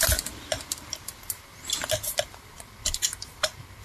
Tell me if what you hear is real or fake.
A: real